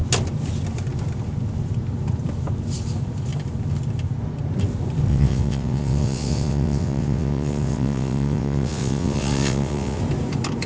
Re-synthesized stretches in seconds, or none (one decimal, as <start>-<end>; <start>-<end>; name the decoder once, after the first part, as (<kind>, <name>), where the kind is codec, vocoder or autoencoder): 5.1-10.0 (vocoder, WaveNeXt)